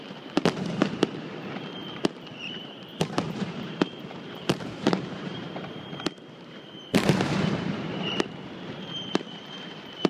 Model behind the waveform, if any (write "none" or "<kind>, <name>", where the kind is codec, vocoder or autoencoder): vocoder, BigVGAN v2